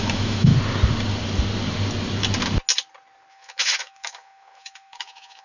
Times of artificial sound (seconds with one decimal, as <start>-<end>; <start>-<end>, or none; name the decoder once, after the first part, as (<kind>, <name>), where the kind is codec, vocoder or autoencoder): 0.0-0.5 (autoencoder, DAC-VAE); 3.3-5.4